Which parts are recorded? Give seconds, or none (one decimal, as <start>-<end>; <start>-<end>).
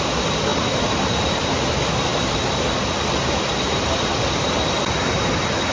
0.0-5.7